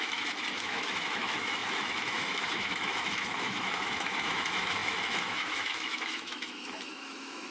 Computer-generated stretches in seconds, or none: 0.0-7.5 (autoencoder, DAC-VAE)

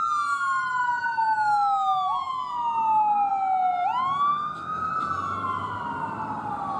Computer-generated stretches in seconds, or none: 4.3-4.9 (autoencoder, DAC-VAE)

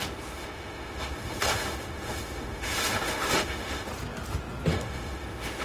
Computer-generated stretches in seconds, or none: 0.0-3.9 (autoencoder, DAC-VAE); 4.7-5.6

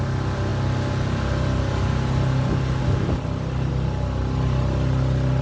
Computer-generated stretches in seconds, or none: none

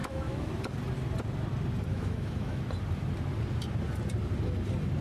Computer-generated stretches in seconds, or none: 0.0-0.5 (autoencoder, DAC-VAE); 1.9-2.6